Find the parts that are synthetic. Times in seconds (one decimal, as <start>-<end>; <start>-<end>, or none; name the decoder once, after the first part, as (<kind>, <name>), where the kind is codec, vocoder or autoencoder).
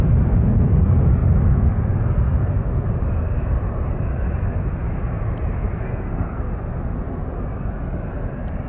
5.5-6.5 (codec, SNAC)